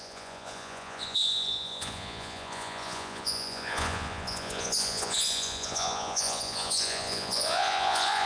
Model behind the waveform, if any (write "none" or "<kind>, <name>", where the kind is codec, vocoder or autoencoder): vocoder, Vocos